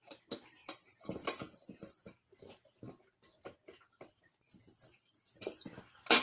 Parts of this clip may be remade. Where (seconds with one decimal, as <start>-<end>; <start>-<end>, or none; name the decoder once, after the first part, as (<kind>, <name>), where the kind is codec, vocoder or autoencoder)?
0.0-0.6 (vocoder, BigVGAN v2); 4.3-5.7